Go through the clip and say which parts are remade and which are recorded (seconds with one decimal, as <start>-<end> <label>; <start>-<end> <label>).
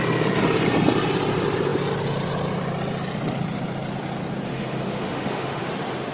0.0-4.5 recorded; 4.5-5.6 remade; 5.6-6.1 recorded